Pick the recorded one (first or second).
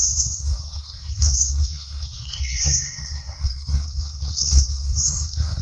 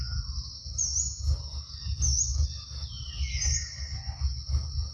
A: second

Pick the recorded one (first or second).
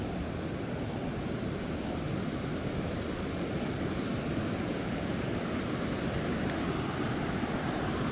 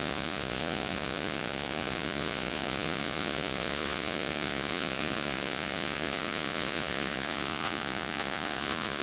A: first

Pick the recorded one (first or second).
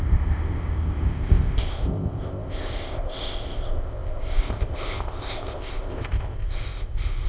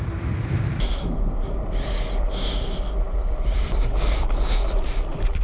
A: second